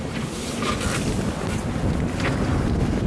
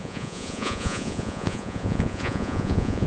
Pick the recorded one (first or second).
first